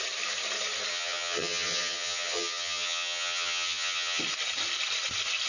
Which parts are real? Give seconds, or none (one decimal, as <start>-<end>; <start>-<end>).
0.0-0.9; 4.2-5.5